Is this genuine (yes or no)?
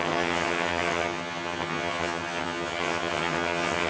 no